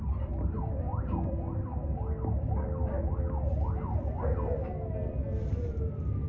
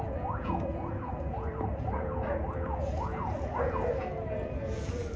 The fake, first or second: second